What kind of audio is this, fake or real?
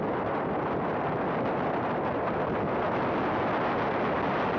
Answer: real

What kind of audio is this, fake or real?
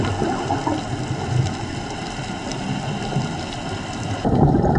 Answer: real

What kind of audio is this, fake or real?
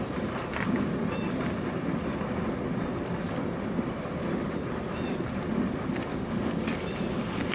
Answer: real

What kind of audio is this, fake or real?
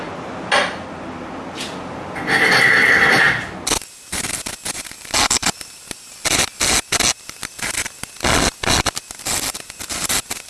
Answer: real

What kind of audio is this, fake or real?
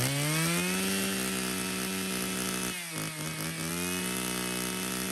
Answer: real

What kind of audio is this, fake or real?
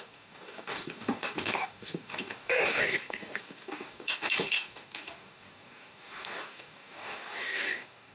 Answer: fake